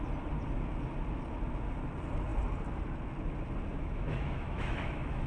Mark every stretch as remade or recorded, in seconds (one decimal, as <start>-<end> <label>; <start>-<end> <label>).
0.0-3.7 recorded; 3.7-5.3 remade